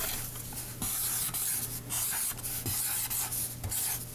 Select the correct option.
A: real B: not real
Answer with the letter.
A